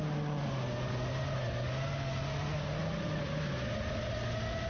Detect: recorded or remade recorded